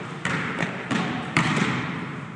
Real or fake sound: fake